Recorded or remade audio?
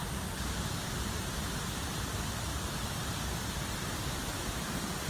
recorded